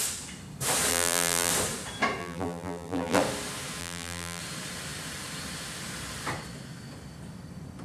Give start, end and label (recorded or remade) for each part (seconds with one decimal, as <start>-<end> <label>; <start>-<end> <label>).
0.0-0.9 recorded; 0.9-1.5 remade; 1.5-2.2 recorded; 2.2-3.2 remade; 3.2-3.8 recorded; 3.8-4.4 remade; 4.4-7.8 recorded